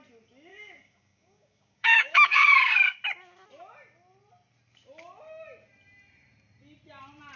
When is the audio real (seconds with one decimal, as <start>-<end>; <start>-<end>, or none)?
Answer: 0.0-0.5; 3.0-7.4